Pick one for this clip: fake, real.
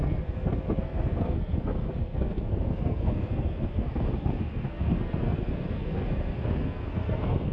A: fake